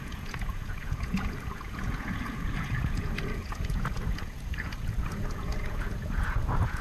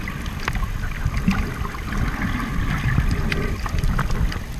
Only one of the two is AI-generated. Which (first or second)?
first